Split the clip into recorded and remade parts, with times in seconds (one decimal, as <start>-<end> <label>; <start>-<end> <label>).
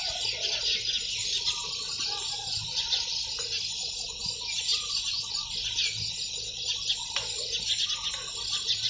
0.0-8.9 recorded